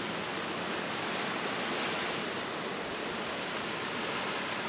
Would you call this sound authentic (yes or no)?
yes